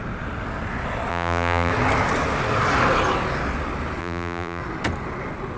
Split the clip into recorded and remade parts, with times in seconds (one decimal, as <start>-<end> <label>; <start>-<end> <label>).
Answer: 0.0-1.1 recorded; 1.1-1.7 remade; 1.7-4.0 recorded; 4.0-4.6 remade; 4.6-5.6 recorded